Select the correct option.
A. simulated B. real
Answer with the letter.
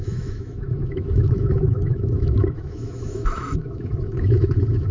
A